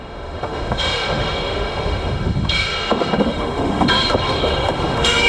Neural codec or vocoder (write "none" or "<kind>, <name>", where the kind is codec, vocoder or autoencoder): autoencoder, DAC-VAE